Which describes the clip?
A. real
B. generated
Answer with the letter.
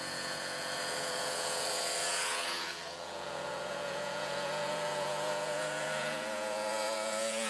B